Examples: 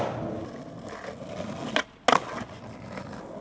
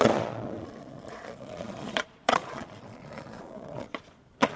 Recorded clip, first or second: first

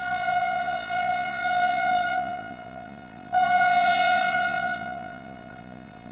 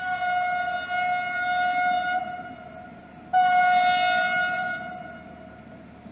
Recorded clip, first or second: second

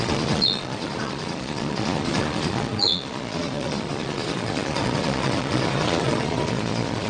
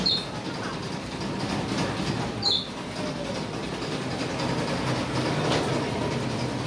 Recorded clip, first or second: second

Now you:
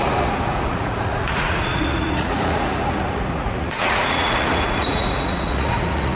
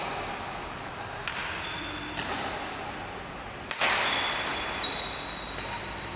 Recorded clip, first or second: second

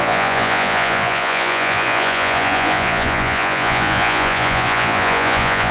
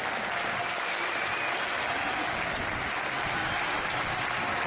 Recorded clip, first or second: second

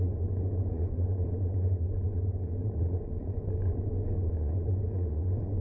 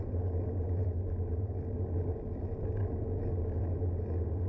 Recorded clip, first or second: second